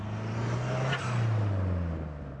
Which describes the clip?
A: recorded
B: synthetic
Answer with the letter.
A